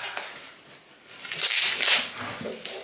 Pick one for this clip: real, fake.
real